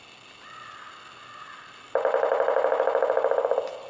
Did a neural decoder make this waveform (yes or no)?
no